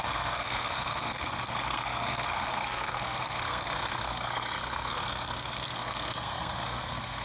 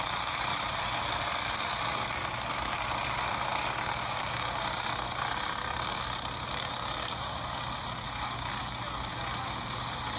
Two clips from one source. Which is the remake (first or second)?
first